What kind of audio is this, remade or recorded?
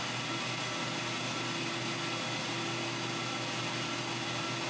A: recorded